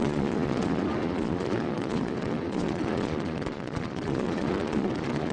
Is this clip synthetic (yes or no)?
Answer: yes